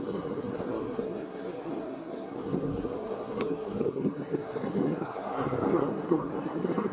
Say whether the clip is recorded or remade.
remade